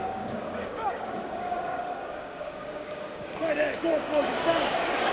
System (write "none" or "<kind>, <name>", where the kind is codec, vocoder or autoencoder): codec, DAC